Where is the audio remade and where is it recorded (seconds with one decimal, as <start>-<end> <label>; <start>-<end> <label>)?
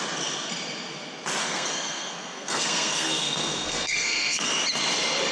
0.0-1.4 recorded; 1.4-4.5 remade; 4.5-5.3 recorded